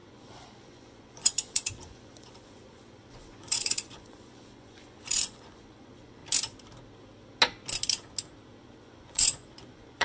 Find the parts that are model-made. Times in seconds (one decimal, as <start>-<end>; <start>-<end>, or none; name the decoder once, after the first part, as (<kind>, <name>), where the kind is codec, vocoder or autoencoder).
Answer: 0.0-6.2 (vocoder, Vocos); 8.6-10.0